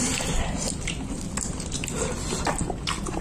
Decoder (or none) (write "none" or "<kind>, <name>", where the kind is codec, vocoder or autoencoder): none